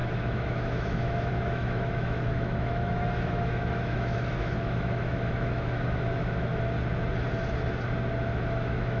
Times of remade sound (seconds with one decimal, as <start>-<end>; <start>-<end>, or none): 0.0-6.5; 8.3-9.0